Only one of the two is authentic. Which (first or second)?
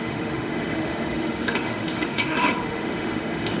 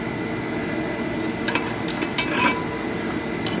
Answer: second